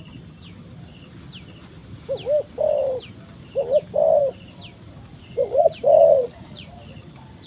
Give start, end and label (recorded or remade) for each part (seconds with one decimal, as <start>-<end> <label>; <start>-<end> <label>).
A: 0.0-5.1 recorded; 5.1-6.7 remade; 6.7-7.5 recorded